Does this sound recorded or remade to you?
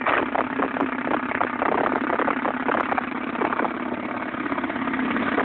recorded